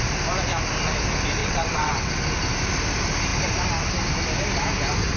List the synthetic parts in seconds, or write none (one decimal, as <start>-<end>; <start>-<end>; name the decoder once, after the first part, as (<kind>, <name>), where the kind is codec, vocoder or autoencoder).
1.4-2.1 (vocoder, WaveNeXt)